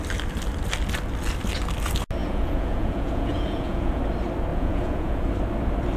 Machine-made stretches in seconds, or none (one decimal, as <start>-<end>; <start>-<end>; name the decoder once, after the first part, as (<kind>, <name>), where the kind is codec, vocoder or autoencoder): 2.2-4.0 (vocoder, Vocos); 4.5-5.3